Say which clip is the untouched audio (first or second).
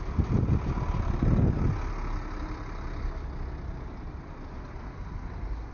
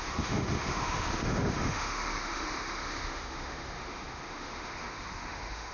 first